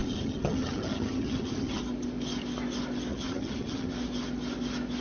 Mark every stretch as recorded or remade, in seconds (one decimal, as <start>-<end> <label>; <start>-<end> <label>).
0.0-1.8 remade; 1.8-3.1 recorded; 3.1-3.9 remade; 3.9-5.0 recorded